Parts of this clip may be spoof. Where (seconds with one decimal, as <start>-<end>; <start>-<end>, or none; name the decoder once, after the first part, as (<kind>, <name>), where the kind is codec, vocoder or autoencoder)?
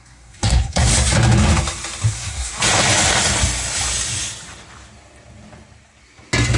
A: 0.0-0.9 (codec, SNAC); 2.1-2.5